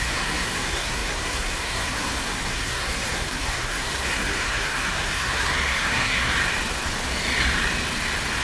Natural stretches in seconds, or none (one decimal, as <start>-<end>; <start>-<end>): 6.3-8.4